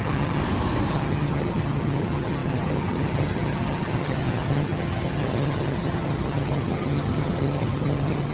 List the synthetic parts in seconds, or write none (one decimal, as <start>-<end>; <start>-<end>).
0.0-0.4; 0.9-8.3